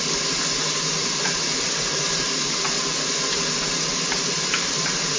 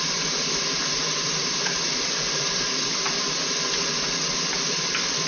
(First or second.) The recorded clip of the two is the first